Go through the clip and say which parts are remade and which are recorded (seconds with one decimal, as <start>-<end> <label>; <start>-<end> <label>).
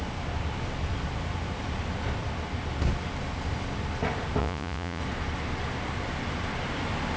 0.0-4.4 recorded; 4.4-5.0 remade; 5.0-7.2 recorded